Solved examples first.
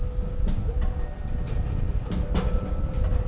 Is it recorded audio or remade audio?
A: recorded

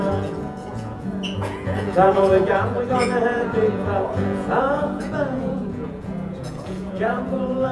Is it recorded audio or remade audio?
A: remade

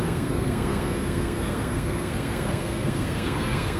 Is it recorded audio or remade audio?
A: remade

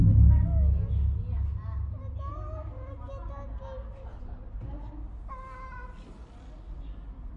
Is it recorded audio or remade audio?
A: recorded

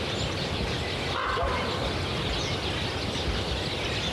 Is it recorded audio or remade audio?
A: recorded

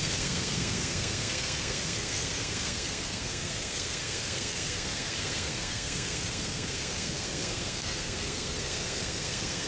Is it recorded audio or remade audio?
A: remade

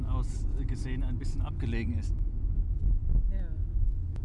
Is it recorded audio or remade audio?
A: recorded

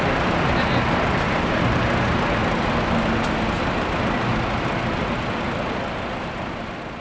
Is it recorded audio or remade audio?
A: recorded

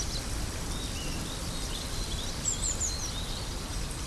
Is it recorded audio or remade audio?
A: recorded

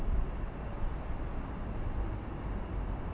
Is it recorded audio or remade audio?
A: recorded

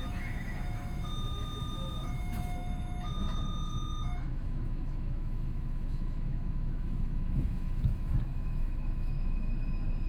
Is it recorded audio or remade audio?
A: remade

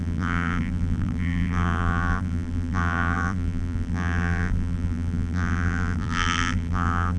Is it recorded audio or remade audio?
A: remade